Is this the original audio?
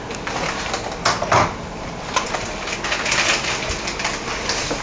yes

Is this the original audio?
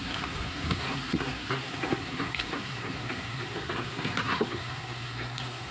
no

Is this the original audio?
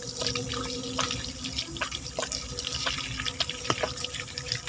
yes